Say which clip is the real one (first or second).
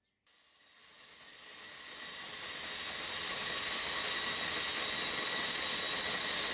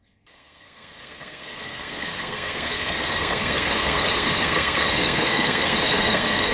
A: first